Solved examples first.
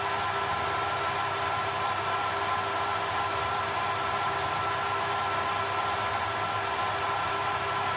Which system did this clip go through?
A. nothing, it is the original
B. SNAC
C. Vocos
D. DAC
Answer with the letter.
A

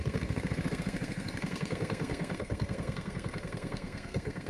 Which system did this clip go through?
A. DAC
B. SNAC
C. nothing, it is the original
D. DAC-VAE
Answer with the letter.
B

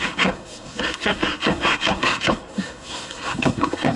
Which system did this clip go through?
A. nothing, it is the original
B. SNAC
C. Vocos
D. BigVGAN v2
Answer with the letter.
B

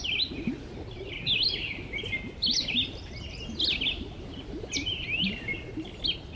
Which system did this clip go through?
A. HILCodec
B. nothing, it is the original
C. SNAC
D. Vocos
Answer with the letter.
B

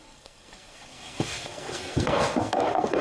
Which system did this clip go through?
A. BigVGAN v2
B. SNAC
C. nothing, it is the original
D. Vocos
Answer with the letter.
B